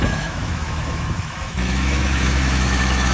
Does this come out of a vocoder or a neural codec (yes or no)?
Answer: yes